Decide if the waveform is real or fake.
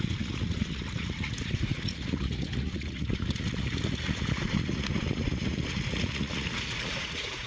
fake